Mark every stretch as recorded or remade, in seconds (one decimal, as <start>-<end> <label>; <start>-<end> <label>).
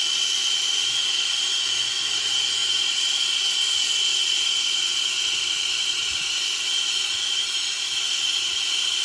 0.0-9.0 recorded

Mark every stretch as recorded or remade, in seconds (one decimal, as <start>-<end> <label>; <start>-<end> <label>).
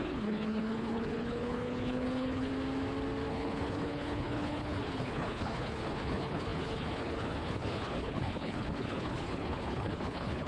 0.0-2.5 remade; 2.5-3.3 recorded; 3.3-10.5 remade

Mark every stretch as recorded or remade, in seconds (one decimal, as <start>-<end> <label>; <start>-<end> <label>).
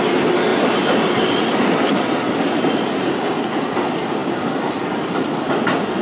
0.0-0.5 recorded; 0.5-1.4 remade; 1.4-4.2 recorded; 4.2-5.6 remade; 5.6-6.0 recorded